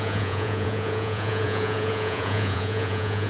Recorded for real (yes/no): no